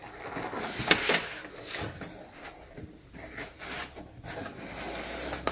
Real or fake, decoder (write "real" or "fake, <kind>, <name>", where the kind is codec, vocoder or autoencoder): real